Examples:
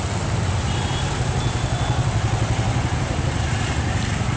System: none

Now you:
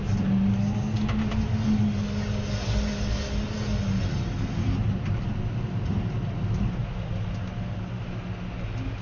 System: none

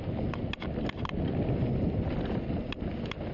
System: none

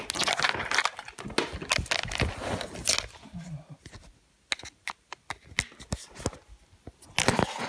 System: none